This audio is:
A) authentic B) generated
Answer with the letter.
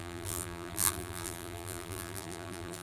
B